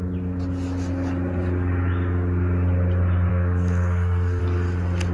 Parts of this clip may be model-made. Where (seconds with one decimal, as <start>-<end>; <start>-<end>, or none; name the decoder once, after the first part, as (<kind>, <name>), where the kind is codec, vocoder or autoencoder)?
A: 3.3-4.4 (codec, SNAC)